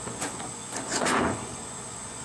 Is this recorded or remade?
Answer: remade